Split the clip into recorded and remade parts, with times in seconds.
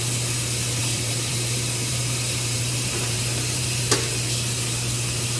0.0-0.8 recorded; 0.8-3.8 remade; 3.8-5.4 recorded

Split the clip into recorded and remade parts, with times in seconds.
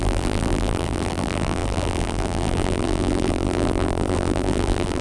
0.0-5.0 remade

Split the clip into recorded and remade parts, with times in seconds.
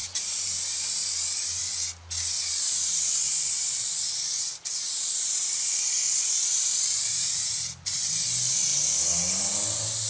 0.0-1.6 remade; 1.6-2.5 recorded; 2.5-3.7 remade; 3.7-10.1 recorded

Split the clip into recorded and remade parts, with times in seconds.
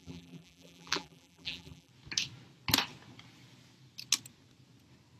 0.0-1.9 remade; 1.9-5.2 recorded